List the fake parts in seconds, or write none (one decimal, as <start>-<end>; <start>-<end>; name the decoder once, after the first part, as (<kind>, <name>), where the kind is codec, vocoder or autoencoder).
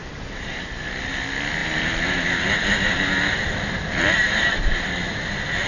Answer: 0.0-0.9 (vocoder, BigVGAN v2); 1.6-5.0